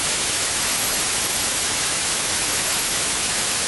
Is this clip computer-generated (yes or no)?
yes